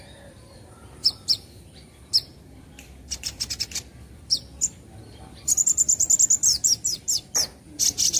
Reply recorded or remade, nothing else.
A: remade